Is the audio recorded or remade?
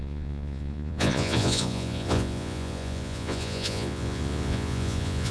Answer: remade